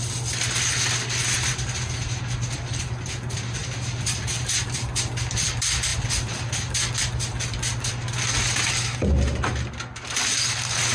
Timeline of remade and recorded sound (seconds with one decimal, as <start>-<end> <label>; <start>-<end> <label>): 0.0-10.9 recorded